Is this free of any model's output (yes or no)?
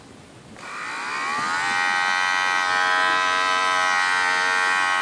yes